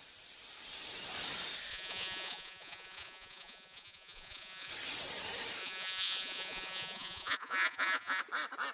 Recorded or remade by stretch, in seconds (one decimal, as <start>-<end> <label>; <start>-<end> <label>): 0.0-1.7 recorded; 1.7-4.7 remade; 4.7-5.6 recorded; 5.6-8.2 remade; 8.2-8.7 recorded